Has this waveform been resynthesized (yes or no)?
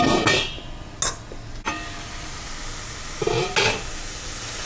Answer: no